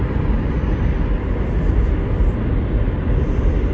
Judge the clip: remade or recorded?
recorded